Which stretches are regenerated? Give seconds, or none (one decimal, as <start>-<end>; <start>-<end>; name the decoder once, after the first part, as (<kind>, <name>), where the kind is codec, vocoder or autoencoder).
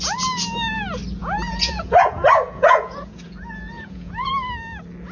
1.2-4.3 (vocoder, Vocos)